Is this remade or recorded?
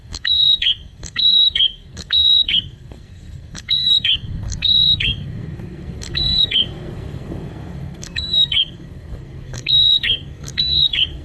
remade